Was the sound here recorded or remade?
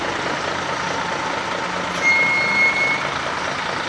recorded